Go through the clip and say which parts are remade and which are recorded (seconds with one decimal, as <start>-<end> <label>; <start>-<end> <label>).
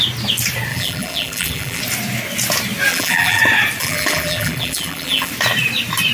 0.0-0.7 recorded; 0.7-1.8 remade; 1.8-2.9 recorded; 2.9-3.4 remade; 3.4-3.8 recorded; 3.8-5.3 remade; 5.3-6.1 recorded